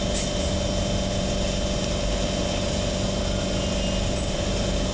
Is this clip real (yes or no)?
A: yes